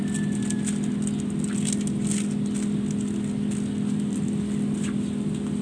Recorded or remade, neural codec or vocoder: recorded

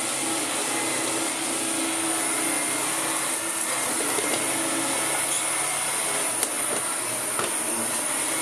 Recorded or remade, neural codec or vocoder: recorded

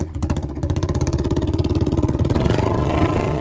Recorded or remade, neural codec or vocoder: remade, vocoder, Vocos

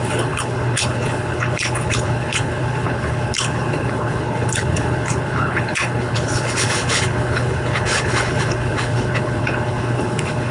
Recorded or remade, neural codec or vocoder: remade, codec, HILCodec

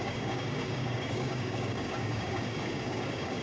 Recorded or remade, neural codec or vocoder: remade, codec, DAC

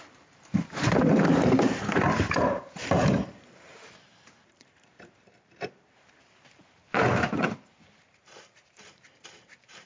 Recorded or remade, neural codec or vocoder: remade, vocoder, BigVGAN v2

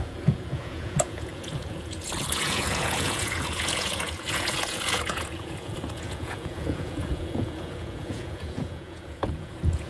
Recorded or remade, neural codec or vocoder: remade, vocoder, Vocos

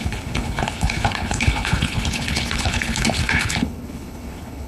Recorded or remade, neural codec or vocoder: remade, codec, HILCodec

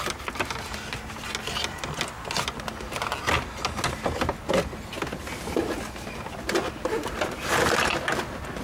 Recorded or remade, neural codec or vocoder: recorded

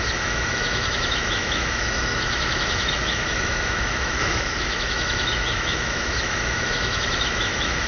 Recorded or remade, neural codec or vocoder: remade, autoencoder, DAC-VAE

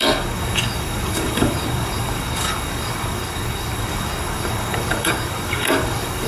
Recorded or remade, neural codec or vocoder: remade, codec, DAC